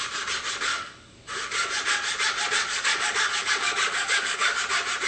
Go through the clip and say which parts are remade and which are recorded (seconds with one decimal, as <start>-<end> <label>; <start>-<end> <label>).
0.0-0.7 recorded; 0.7-1.7 remade; 1.7-2.6 recorded; 2.6-4.6 remade; 4.6-5.1 recorded